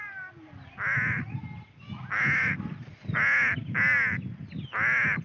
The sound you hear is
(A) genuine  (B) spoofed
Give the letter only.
A